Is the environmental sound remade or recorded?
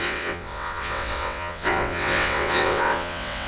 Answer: remade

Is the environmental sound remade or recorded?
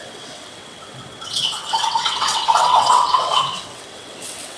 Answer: remade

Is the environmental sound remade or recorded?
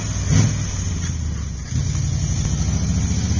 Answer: recorded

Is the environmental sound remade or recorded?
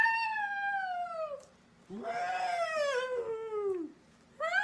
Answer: recorded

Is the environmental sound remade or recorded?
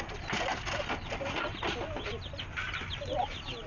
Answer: recorded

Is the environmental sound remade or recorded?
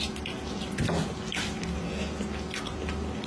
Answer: recorded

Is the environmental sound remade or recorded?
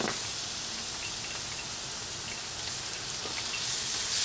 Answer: recorded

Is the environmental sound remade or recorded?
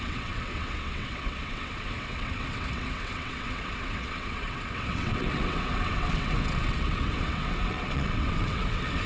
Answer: remade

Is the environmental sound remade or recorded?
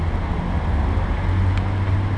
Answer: recorded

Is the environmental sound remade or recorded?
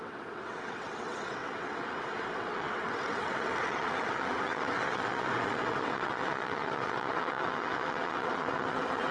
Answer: remade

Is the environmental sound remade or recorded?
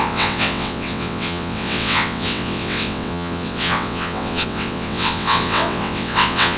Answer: remade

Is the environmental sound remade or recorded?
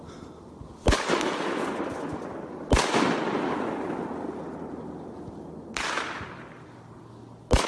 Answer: recorded